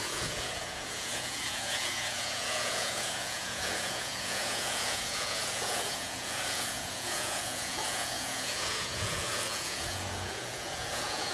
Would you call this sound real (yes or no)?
no